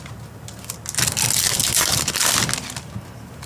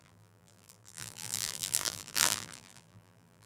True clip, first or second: first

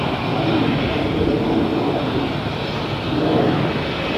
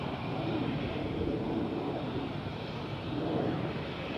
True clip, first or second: first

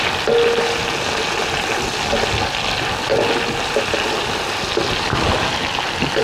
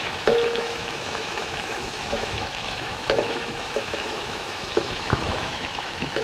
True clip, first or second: first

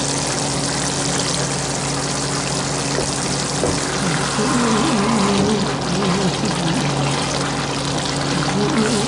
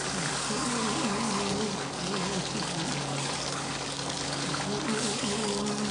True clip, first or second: first